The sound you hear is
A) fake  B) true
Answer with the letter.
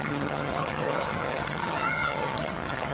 A